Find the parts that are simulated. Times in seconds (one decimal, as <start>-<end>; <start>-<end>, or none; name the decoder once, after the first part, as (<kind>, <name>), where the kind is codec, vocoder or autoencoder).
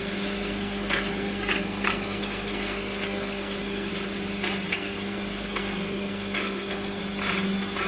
0.0-3.9 (codec, SNAC); 4.7-7.0